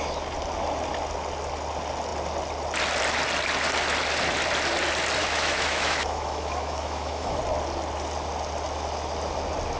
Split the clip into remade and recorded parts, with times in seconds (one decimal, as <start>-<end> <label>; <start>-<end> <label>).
0.0-5.2 recorded; 5.2-7.4 remade; 7.4-9.8 recorded